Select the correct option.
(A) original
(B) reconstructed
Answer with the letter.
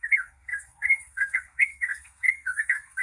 B